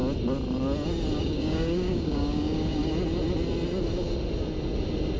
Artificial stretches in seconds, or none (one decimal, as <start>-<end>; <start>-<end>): 1.2-2.8